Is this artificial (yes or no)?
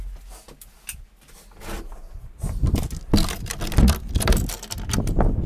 no